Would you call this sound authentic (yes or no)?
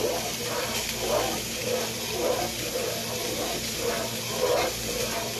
yes